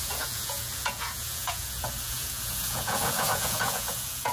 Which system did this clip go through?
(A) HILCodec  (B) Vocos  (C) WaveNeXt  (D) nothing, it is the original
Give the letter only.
B